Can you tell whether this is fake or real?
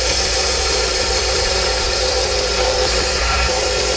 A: fake